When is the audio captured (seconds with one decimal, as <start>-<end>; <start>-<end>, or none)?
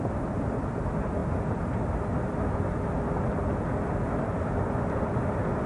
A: 0.0-5.7